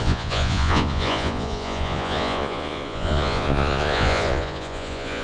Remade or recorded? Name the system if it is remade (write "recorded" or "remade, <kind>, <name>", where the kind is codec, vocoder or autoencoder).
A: remade, vocoder, Vocos